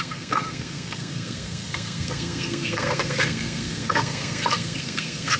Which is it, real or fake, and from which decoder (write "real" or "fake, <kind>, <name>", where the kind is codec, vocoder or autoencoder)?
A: fake, codec, SNAC